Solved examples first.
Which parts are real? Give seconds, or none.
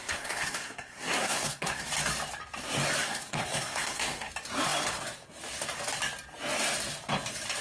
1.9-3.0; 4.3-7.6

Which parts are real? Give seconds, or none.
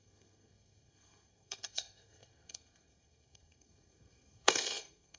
none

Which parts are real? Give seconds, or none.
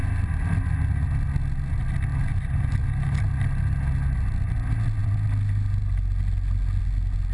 0.0-7.3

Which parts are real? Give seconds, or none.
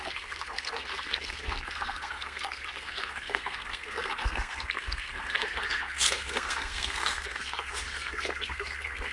none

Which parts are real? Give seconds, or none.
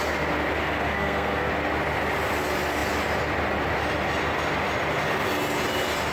0.0-0.6; 1.5-6.1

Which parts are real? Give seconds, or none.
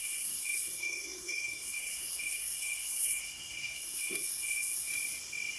4.9-5.6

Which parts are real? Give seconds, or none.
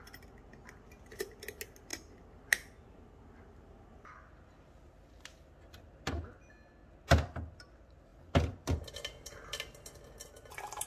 0.0-10.9